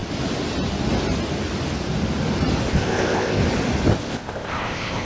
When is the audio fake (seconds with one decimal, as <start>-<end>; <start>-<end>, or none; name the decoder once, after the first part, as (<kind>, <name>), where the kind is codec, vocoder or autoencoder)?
2.7-3.4 (codec, ZipCodec); 4.0-5.1